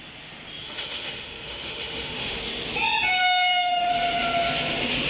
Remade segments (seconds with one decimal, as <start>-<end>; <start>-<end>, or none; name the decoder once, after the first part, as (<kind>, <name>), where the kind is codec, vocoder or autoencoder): 0.6-2.4 (autoencoder, DAC-VAE); 3.1-3.9